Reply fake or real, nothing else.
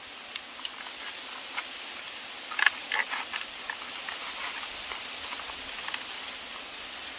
real